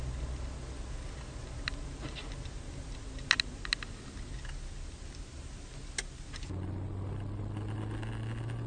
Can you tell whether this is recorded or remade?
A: recorded